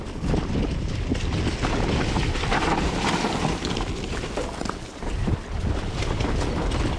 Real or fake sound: real